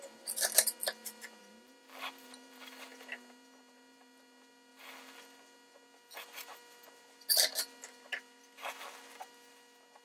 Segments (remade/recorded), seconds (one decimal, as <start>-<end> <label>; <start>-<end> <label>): 0.0-10.0 recorded